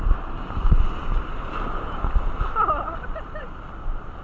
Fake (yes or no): no